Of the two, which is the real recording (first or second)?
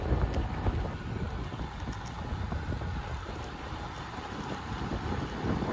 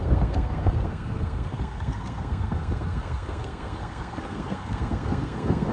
first